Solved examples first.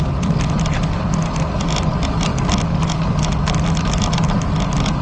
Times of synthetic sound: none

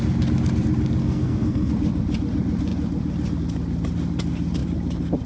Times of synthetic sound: 1.0-1.7 (codec, SNAC)

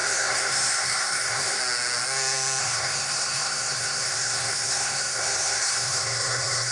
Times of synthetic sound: 0.0-1.6 (codec, SNAC); 2.6-6.7

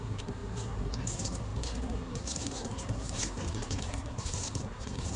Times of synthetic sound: 0.0-5.2 (codec, SNAC)

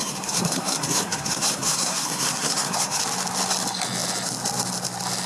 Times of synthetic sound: 0.0-3.0 (codec, SNAC)